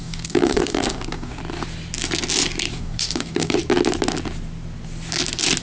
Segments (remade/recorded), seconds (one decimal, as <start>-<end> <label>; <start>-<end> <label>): 0.0-1.4 remade; 1.4-2.7 recorded; 2.7-3.6 remade; 3.6-5.6 recorded